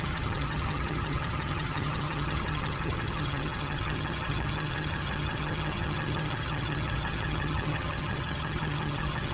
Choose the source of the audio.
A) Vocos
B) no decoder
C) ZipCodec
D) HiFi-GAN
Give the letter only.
D